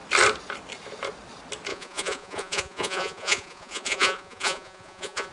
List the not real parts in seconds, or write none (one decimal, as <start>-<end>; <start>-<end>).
1.7-5.3